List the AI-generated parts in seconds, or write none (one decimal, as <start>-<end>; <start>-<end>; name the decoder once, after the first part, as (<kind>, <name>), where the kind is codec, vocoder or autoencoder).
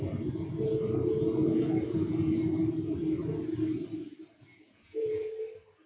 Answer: 1.4-2.4 (vocoder, Vocos); 4.5-5.3